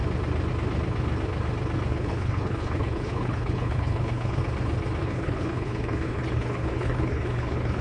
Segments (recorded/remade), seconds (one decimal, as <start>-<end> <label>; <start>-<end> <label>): 0.0-1.9 recorded; 1.9-4.4 remade; 4.4-5.0 recorded; 5.0-7.8 remade